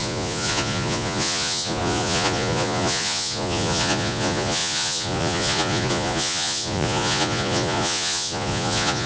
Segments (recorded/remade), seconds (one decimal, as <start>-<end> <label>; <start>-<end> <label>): 0.0-9.1 remade